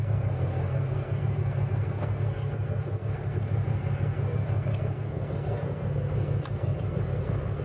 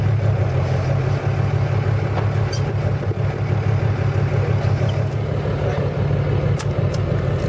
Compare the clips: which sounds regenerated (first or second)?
first